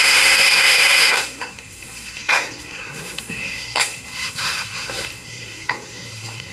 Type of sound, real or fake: fake